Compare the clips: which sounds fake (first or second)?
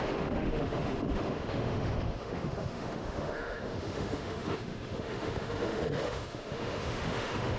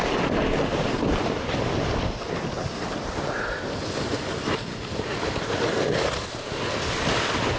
first